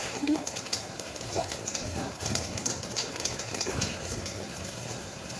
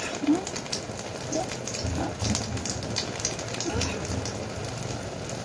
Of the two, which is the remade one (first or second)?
first